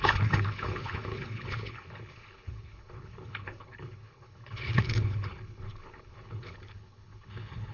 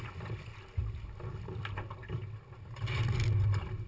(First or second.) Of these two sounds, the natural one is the second